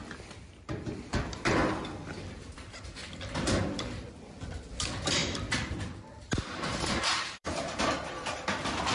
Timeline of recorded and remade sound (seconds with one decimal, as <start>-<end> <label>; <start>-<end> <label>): 0.0-8.9 remade